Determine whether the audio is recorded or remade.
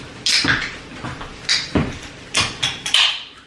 recorded